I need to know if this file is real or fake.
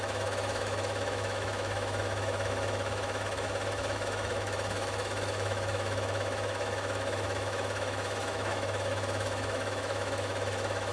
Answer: fake